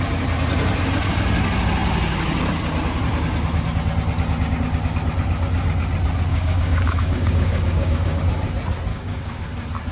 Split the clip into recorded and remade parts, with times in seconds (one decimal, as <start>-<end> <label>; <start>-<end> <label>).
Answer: 0.0-6.3 recorded; 6.3-8.2 remade; 8.2-8.9 recorded; 8.9-9.4 remade; 9.4-9.9 recorded